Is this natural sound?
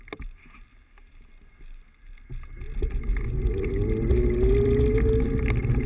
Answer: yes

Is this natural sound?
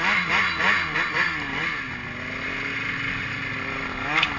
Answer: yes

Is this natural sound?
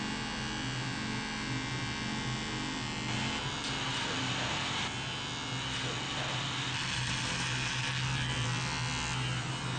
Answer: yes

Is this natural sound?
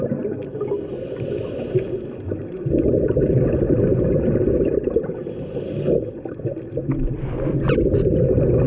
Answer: yes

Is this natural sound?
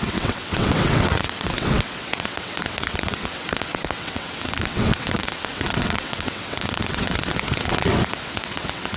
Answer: no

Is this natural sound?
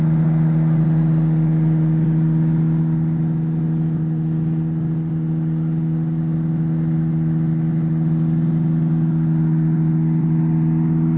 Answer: yes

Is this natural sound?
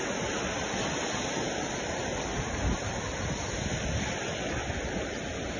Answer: yes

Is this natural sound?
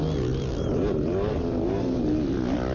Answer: yes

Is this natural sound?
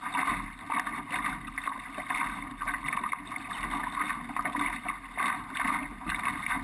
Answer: yes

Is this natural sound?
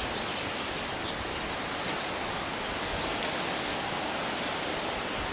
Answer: yes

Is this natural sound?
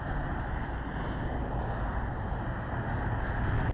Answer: yes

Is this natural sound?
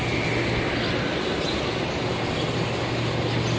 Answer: yes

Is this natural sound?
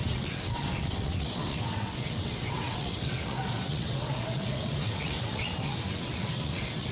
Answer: no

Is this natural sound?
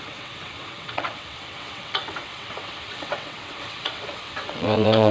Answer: no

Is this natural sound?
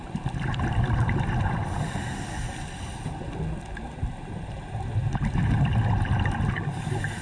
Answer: yes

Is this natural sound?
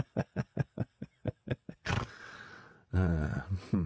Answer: no